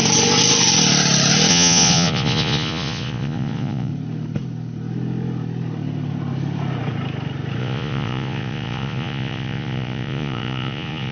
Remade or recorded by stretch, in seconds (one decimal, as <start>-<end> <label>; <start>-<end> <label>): 0.0-1.5 recorded; 1.5-3.9 remade; 3.9-7.6 recorded; 7.6-11.1 remade